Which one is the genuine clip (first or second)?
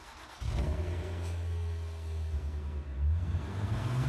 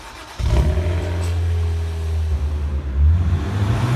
second